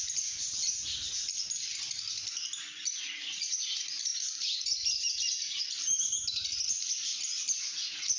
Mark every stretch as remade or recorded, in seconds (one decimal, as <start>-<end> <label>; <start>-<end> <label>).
0.0-8.2 recorded